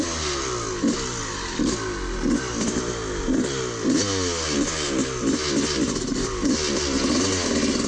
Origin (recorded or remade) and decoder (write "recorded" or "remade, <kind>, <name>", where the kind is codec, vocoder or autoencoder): recorded